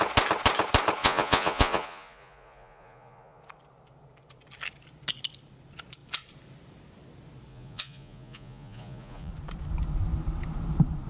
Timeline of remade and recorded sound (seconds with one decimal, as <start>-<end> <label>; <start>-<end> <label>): 0.0-1.0 recorded; 1.0-3.4 remade; 3.4-7.5 recorded; 7.5-9.3 remade; 9.3-11.1 recorded